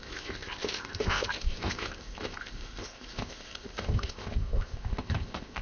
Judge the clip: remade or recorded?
remade